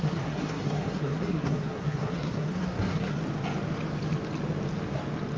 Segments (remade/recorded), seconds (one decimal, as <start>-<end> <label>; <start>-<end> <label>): 0.0-3.2 remade; 3.2-5.4 recorded